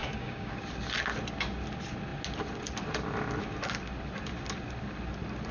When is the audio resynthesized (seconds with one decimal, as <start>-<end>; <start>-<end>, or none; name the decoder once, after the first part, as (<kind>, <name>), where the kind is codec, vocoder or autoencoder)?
0.0-0.5 (codec, DAC)

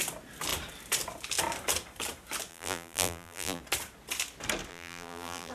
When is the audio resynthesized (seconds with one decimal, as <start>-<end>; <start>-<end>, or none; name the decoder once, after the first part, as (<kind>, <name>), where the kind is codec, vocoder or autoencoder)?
2.5-3.6 (vocoder, BigVGAN v2); 4.7-5.5

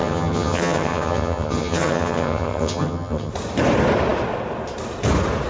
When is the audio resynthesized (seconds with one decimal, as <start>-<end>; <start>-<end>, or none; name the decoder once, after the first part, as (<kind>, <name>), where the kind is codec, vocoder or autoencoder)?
0.0-3.3 (vocoder, HiFi-GAN)

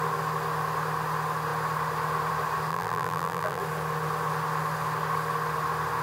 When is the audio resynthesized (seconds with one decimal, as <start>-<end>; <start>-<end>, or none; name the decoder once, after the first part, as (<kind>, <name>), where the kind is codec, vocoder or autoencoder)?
2.7-3.6 (vocoder, BigVGAN v2)

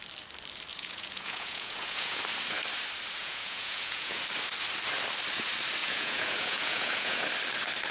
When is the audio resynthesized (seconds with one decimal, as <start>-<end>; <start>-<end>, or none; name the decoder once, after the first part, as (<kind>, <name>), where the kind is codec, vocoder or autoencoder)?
0.7-2.2 (vocoder, Vocos); 3.2-4.2; 5.8-7.2

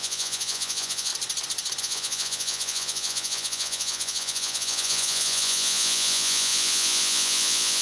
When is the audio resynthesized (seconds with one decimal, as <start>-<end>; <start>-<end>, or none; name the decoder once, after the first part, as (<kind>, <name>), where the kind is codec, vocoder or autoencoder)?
0.0-1.1 (vocoder, Vocos); 1.8-7.8

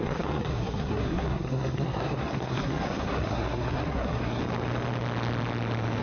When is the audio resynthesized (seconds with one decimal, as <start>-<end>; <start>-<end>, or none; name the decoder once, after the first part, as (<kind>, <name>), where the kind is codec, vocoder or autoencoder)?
0.0-4.4 (codec, SNAC)